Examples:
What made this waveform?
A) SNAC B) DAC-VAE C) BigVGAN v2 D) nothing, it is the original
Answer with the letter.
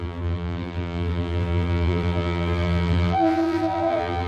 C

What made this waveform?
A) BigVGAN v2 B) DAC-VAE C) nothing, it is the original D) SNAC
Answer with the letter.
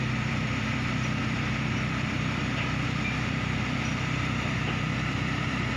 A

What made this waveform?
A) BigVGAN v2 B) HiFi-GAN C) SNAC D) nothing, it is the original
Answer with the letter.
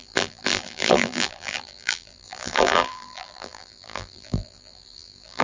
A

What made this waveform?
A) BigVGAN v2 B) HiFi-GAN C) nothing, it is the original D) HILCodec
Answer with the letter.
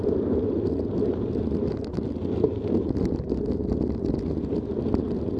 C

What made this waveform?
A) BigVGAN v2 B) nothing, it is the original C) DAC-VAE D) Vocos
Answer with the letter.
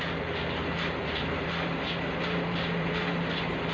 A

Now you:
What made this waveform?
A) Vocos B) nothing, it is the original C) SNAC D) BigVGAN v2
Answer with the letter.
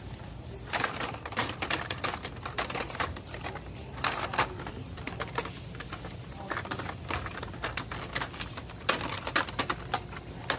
D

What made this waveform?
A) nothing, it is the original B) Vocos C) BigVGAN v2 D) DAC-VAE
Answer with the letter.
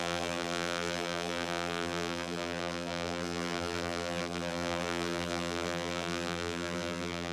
C